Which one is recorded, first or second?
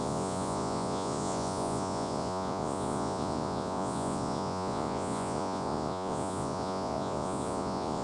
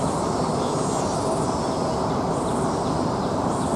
second